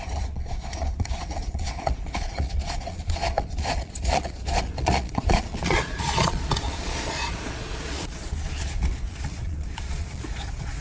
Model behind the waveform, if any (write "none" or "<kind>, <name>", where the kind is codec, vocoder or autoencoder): vocoder, Vocos